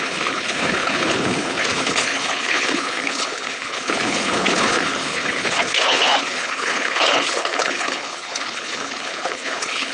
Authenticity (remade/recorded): remade